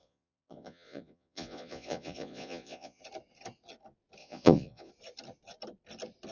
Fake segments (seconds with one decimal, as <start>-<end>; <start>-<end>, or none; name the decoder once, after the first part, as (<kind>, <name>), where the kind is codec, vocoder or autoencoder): 0.0-3.0 (vocoder, Vocos); 4.2-4.9